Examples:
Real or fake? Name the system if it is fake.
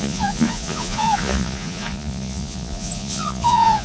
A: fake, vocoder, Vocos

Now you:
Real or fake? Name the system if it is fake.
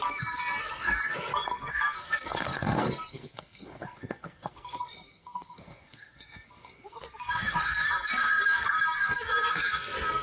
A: fake, codec, SNAC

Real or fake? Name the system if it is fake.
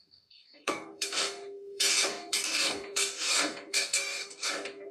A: fake, codec, DAC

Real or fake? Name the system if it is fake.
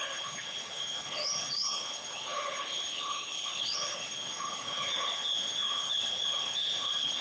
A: fake, codec, HILCodec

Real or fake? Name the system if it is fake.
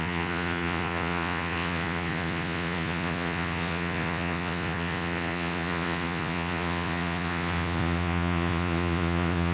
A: fake, vocoder, Vocos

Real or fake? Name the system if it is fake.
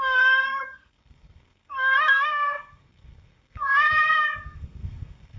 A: fake, codec, SNAC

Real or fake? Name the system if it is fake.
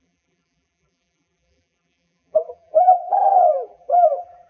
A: fake, vocoder, BigVGAN v2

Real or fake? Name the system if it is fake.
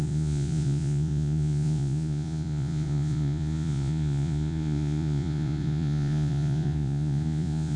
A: fake, vocoder, Vocos